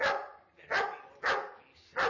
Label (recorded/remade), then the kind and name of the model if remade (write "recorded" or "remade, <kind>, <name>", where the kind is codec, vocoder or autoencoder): recorded